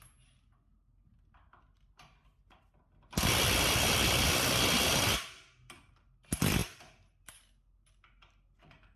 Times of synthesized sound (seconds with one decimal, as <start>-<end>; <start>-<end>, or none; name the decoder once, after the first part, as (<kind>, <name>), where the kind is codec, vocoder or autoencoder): none